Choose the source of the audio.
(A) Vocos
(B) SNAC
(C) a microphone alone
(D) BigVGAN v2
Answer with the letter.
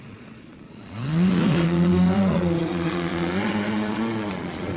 A